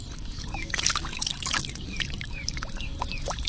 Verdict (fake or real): fake